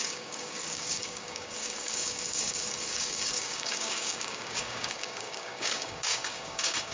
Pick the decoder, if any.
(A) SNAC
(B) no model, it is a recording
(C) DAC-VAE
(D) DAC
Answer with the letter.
D